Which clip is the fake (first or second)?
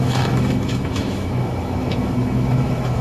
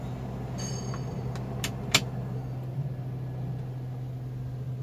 first